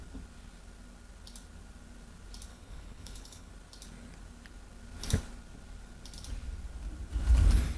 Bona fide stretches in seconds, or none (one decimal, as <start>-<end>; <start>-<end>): 0.0-2.5; 3.5-7.8